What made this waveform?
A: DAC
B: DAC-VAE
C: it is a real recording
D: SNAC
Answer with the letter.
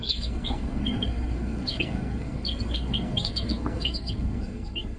D